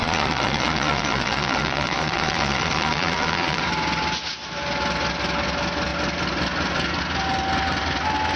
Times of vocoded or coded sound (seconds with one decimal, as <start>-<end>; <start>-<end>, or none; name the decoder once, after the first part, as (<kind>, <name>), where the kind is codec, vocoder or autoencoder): 0.0-3.6 (vocoder, Vocos)